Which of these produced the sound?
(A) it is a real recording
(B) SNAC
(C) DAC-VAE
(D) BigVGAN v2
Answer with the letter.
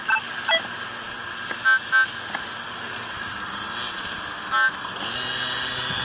A